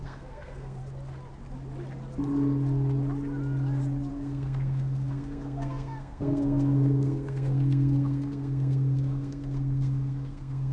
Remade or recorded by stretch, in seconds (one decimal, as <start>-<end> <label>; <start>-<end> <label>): 0.0-0.8 remade; 0.8-4.1 recorded; 4.1-10.7 remade